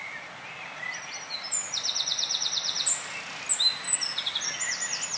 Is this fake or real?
real